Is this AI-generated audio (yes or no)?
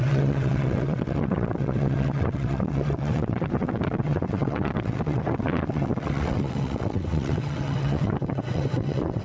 yes